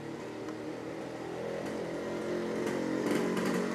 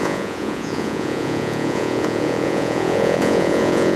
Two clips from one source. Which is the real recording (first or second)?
first